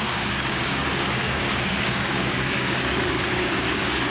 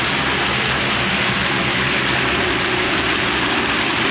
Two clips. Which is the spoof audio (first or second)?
first